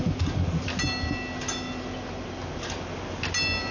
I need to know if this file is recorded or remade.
recorded